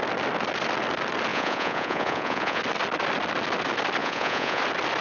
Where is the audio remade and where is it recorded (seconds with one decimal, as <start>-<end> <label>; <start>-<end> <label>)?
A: 0.0-1.3 recorded; 1.3-2.6 remade; 2.6-4.0 recorded; 4.0-4.6 remade; 4.6-5.0 recorded

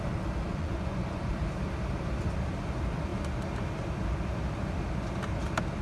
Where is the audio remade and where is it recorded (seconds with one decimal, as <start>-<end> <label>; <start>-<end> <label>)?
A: 0.0-0.5 recorded; 0.5-1.3 remade; 1.3-5.8 recorded

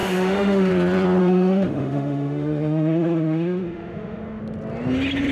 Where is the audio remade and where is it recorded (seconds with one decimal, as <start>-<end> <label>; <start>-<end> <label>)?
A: 0.0-0.7 remade; 0.7-1.2 recorded; 1.2-4.4 remade; 4.4-5.3 recorded

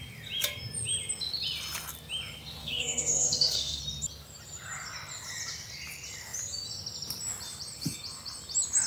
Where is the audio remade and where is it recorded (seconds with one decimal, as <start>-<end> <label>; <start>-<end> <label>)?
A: 0.0-2.6 recorded; 2.6-3.8 remade; 3.8-8.9 recorded

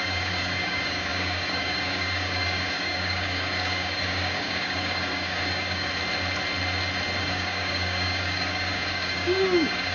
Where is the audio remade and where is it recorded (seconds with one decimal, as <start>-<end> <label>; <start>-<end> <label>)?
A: 0.0-5.9 remade; 5.9-7.2 recorded; 7.2-9.9 remade

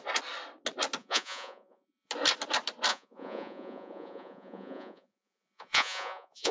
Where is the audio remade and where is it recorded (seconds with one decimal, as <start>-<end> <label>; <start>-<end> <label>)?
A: 0.0-1.0 recorded; 1.0-2.1 remade; 2.1-2.9 recorded; 2.9-6.5 remade

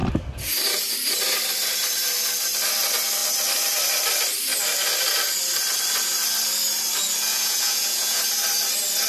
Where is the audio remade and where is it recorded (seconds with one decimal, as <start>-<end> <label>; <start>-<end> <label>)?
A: 0.0-7.3 recorded; 7.3-8.2 remade; 8.2-9.1 recorded